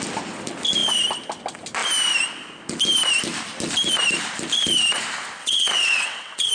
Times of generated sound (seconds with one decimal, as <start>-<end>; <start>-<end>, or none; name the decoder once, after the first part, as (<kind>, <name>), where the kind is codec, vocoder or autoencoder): 5.4-6.5 (vocoder, WaveNeXt)